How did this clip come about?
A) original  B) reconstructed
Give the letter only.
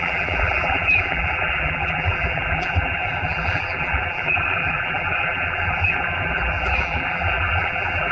B